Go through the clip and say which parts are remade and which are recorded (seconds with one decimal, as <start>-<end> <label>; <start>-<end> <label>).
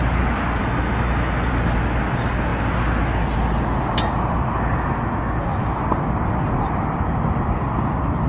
0.0-0.6 recorded; 0.6-1.5 remade; 1.5-8.3 recorded